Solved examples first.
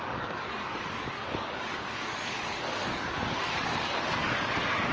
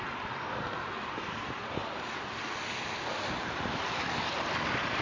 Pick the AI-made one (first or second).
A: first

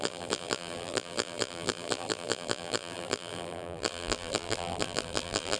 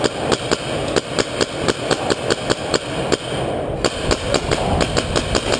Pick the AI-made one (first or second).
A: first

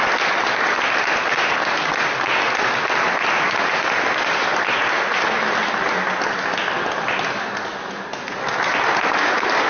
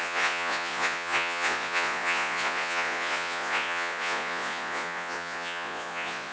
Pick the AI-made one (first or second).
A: second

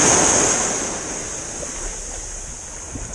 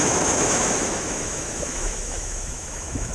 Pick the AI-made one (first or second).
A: second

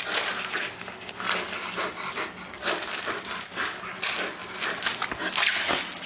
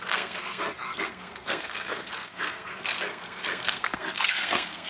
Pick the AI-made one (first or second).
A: second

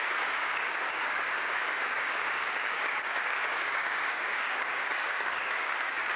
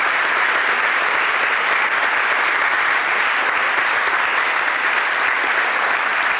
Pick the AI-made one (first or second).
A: first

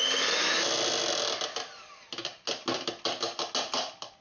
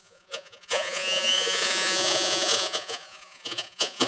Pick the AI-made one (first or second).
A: second